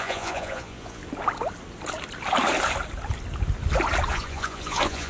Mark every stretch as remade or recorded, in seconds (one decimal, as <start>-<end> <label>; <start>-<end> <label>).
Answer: 0.0-1.0 remade; 1.0-4.1 recorded; 4.1-5.1 remade